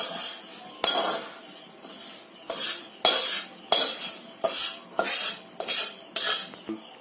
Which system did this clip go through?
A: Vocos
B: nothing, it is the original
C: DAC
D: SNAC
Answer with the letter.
B